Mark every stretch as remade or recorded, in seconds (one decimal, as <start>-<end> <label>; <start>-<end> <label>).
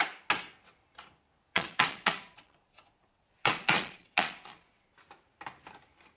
0.0-1.5 recorded; 1.5-4.9 remade; 4.9-6.2 recorded